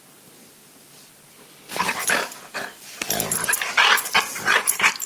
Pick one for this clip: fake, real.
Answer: fake